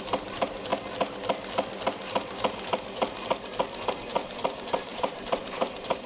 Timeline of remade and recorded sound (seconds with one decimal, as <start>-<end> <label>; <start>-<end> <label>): 0.0-0.7 remade; 0.7-3.9 recorded; 3.9-6.1 remade